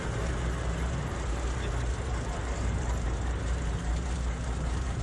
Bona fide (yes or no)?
no